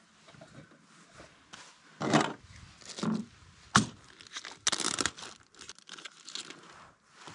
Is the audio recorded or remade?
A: recorded